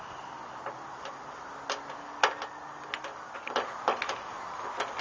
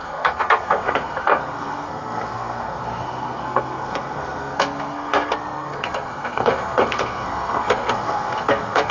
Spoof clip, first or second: second